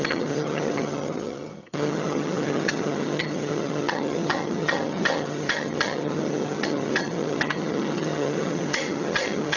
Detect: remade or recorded remade